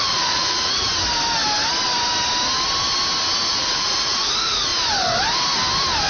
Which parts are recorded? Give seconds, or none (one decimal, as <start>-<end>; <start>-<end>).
0.9-3.5; 4.7-6.1